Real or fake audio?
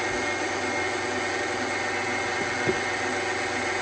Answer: real